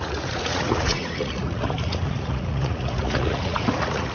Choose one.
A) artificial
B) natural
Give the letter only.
A